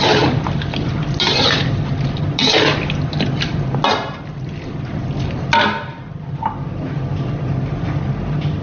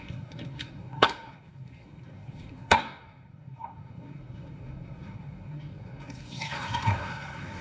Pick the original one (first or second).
first